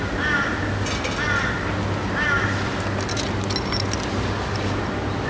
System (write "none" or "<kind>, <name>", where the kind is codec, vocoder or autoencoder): none